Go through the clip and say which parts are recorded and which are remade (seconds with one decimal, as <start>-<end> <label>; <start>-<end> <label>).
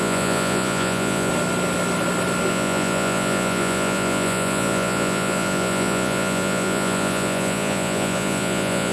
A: 0.0-1.3 remade; 1.3-2.5 recorded; 2.5-8.9 remade